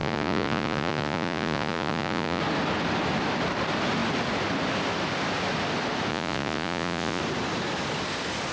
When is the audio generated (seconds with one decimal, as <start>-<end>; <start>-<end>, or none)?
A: 0.0-2.4; 6.1-7.2